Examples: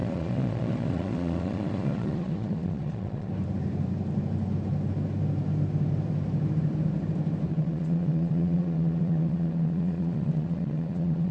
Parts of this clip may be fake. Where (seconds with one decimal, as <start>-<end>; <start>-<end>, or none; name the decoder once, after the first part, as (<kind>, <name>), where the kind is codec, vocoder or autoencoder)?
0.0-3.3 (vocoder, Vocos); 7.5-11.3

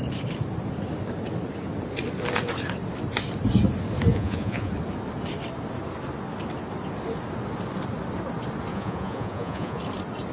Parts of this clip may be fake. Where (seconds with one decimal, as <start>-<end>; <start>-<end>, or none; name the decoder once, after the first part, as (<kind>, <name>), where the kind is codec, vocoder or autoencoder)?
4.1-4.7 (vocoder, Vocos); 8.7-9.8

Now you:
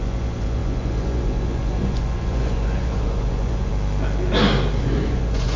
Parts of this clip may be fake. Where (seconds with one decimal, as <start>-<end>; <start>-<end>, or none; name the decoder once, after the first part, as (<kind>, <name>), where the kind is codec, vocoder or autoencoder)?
0.0-3.7 (vocoder, Vocos); 4.8-5.6